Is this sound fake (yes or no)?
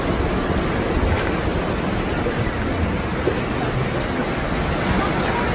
no